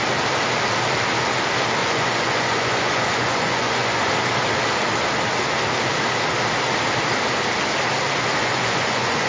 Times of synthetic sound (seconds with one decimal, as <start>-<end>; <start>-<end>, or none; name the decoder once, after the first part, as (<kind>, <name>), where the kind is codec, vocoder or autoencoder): 1.8-4.1 (vocoder, Vocos); 8.4-9.3